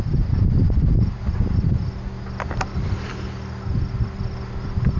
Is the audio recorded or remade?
recorded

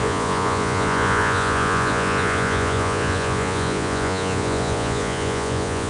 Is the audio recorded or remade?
remade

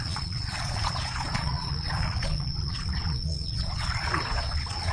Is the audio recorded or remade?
remade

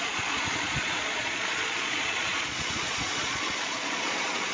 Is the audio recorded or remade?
remade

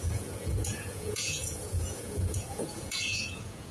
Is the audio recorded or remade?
remade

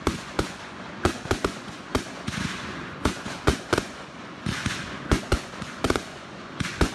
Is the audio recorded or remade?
remade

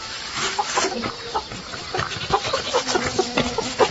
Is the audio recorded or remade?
recorded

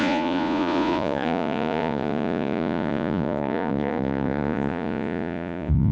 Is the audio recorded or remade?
remade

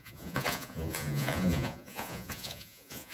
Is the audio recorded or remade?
remade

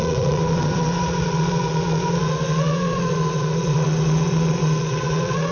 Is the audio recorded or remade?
remade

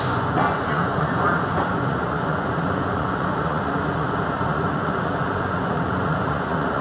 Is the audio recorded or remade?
remade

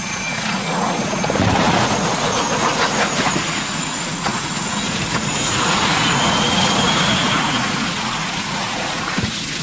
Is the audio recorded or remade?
remade